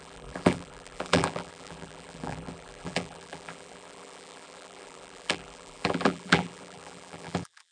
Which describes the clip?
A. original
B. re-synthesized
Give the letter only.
B